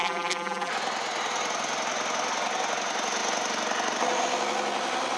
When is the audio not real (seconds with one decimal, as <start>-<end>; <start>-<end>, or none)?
0.0-0.7